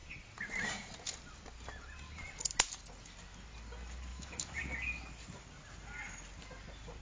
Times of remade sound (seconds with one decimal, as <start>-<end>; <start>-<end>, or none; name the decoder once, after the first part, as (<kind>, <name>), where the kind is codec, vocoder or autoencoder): 4.1-4.6 (autoencoder, DAC-VAE)